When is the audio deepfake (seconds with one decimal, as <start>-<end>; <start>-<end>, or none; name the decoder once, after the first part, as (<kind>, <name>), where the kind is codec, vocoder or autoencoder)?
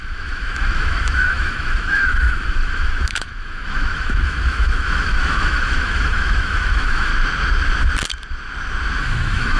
0.0-7.1 (autoencoder, DAC-VAE); 9.0-9.6